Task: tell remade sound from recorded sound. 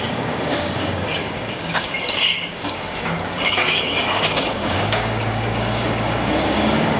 remade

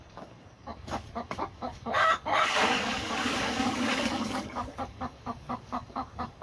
remade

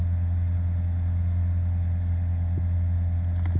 recorded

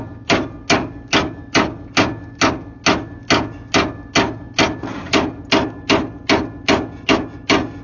recorded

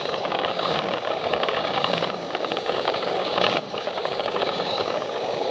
remade